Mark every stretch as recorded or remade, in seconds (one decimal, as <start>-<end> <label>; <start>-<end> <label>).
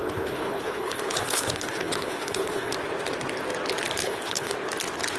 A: 0.0-2.7 remade; 2.7-4.0 recorded; 4.0-4.5 remade; 4.5-5.2 recorded